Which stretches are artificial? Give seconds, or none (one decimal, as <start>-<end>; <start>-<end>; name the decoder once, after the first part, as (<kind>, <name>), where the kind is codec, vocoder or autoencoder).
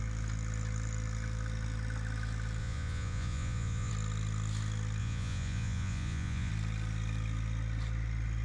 2.6-3.9 (vocoder, Vocos); 5.0-6.5